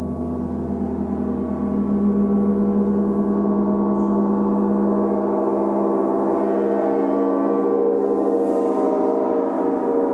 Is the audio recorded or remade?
recorded